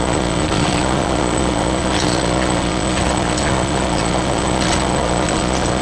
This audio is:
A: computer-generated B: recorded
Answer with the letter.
A